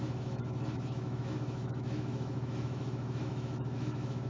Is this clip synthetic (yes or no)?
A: yes